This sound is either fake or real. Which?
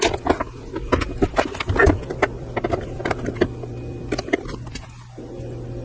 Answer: real